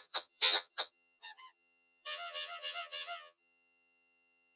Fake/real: fake